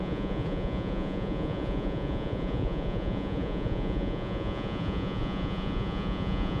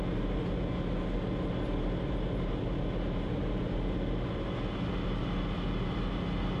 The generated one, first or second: first